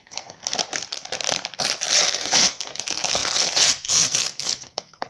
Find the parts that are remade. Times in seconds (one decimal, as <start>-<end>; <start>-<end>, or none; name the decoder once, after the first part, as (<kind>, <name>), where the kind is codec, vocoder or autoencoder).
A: 0.0-0.4 (codec, SNAC); 2.0-5.1